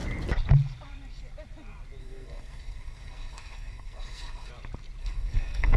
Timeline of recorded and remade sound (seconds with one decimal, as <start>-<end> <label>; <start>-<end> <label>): 0.0-2.0 recorded; 2.0-4.5 remade; 4.5-5.0 recorded; 5.0-5.8 remade